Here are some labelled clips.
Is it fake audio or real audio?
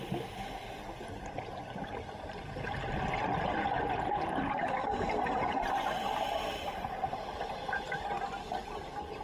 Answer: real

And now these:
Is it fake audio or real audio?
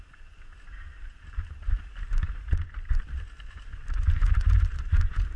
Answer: real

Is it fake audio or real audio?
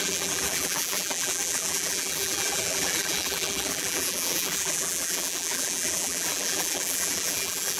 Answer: fake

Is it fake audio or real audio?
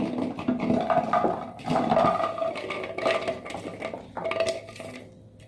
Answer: real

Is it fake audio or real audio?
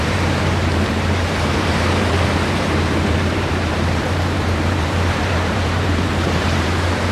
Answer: fake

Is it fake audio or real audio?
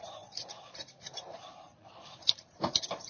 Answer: fake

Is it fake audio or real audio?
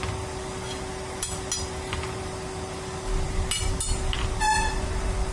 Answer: real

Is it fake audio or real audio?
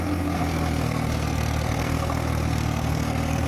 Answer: fake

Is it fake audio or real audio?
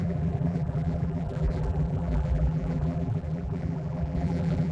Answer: fake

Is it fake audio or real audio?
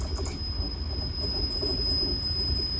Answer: real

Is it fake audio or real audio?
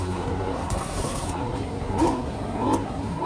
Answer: fake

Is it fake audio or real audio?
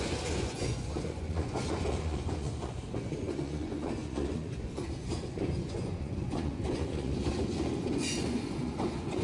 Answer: fake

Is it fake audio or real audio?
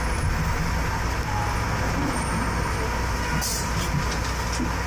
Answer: real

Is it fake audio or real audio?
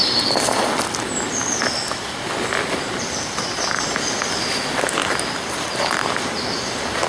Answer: real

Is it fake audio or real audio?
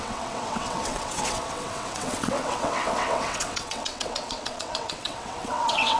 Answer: fake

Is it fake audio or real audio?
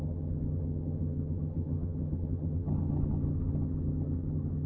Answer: fake